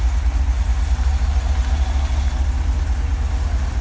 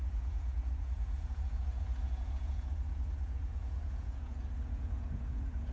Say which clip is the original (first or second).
first